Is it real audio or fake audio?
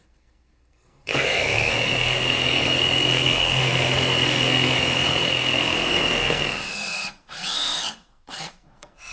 fake